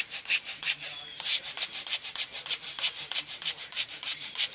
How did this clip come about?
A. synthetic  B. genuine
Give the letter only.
A